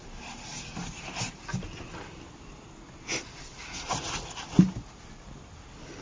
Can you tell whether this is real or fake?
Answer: real